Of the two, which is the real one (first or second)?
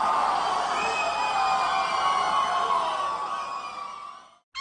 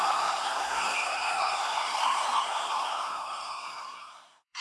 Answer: first